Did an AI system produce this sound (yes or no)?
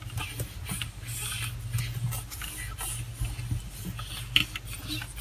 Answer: no